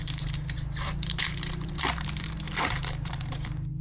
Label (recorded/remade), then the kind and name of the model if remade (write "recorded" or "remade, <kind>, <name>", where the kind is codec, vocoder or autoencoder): remade, vocoder, BigVGAN v2